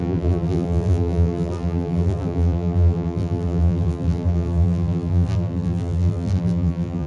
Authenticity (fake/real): fake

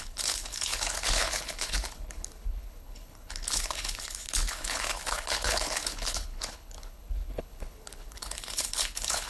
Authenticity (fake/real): fake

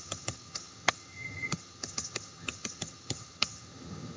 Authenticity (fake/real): fake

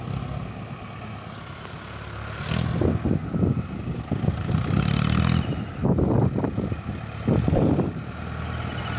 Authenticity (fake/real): real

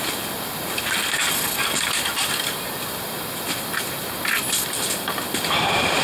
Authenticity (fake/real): real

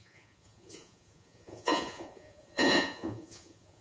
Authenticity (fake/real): fake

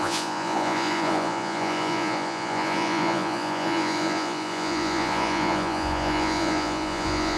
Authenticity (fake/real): fake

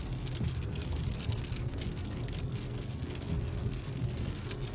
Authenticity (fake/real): fake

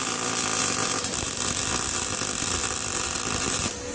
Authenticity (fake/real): fake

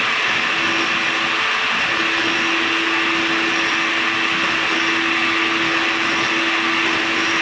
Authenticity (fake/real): real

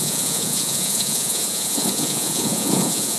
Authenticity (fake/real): fake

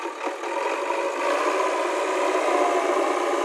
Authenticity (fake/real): real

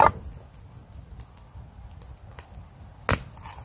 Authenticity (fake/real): real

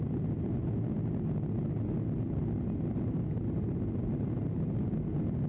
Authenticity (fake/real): real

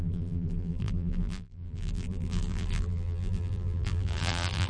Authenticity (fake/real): fake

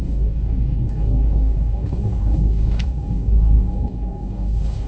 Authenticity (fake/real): fake